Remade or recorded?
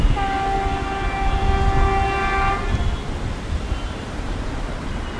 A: recorded